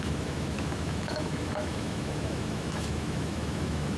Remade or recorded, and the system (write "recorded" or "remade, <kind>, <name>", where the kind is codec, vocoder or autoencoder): remade, autoencoder, DAC-VAE